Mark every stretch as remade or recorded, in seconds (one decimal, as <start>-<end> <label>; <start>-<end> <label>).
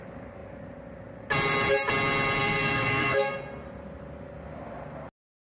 0.0-2.4 recorded; 2.4-3.3 remade; 3.3-5.5 recorded